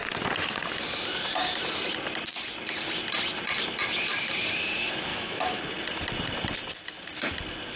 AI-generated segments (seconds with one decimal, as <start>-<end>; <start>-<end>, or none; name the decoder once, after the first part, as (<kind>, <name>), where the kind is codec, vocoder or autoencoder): 5.1-5.6 (autoencoder, DAC-VAE)